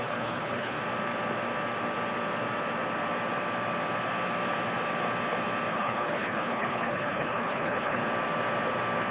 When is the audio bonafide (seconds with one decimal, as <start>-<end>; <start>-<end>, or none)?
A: 0.8-5.7; 8.0-9.1